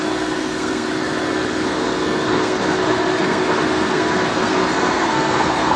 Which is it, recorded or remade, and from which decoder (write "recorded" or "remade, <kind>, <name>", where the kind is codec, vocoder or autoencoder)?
remade, codec, SNAC